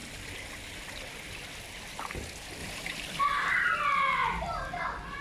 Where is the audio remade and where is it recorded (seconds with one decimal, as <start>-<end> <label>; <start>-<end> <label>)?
0.0-2.6 recorded; 2.6-3.2 remade; 3.2-4.2 recorded; 4.2-5.2 remade